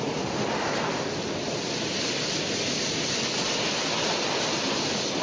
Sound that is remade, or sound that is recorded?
recorded